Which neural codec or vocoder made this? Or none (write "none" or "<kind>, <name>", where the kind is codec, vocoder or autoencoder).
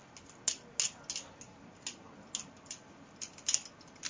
none